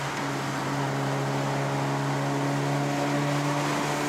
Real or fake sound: real